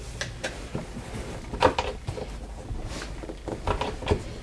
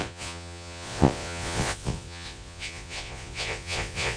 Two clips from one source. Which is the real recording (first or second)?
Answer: first